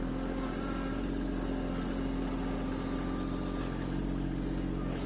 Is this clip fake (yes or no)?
no